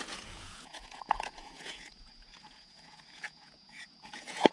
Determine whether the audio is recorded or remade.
remade